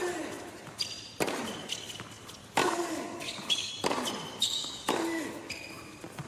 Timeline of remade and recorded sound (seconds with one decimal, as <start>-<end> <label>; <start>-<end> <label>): 0.0-2.6 recorded; 2.6-3.7 remade; 3.7-4.3 recorded; 4.3-5.5 remade; 5.5-6.3 recorded